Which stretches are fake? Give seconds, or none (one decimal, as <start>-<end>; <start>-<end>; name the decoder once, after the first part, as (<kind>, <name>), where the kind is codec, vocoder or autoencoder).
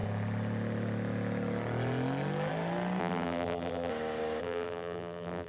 3.0-3.9 (vocoder, BigVGAN v2); 4.4-5.5